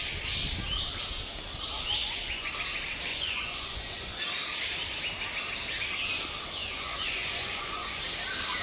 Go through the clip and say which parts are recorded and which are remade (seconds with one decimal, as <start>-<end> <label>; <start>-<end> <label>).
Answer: 0.0-2.0 recorded; 2.0-2.5 remade; 2.5-3.1 recorded; 3.1-4.2 remade; 4.2-6.6 recorded; 6.6-8.0 remade; 8.0-8.6 recorded